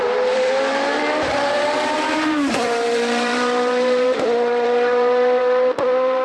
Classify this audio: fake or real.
fake